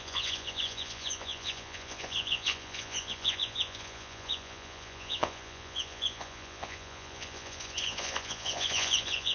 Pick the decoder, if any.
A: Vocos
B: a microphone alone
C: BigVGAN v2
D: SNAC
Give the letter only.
A